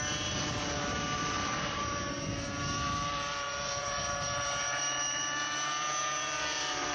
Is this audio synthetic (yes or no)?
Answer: yes